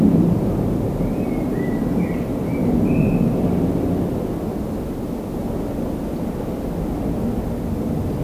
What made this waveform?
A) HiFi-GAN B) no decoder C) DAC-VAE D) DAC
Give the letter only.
B